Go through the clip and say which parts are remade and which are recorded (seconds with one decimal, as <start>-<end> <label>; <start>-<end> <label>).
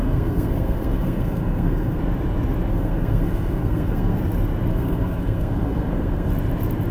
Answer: 0.0-2.0 remade; 2.0-2.7 recorded; 2.7-4.2 remade; 4.2-4.7 recorded; 4.7-6.3 remade; 6.3-6.9 recorded